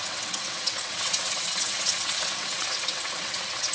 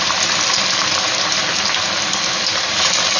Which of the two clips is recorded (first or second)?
second